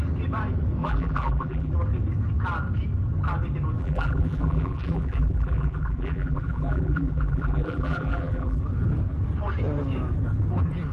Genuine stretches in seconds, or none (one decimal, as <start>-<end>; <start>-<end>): 0.0-0.8; 1.7-3.8; 8.6-10.9

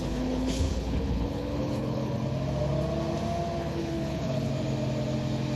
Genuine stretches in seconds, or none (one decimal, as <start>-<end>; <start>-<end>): 2.2-3.6; 4.5-5.6

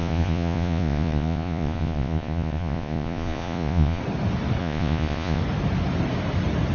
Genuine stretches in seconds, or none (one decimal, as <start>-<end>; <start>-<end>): 4.0-4.6; 5.4-6.7

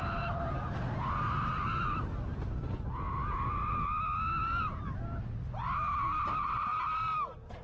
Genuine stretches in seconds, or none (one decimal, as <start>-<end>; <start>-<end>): 0.0-7.6

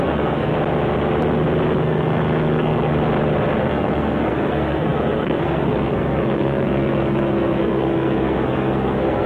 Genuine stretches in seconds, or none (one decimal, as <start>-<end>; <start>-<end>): 0.5-1.8; 2.9-3.6